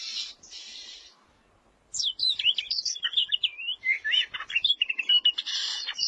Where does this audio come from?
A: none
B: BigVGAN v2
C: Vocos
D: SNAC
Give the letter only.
B